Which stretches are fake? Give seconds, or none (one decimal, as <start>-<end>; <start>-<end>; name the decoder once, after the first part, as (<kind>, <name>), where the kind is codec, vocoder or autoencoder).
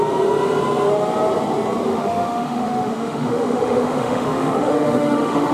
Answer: 1.9-5.5 (autoencoder, DAC-VAE)